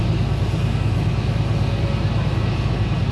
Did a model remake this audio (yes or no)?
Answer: no